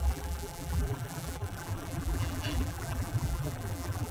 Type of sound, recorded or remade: remade